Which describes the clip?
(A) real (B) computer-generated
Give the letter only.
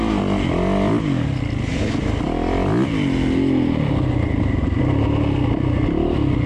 A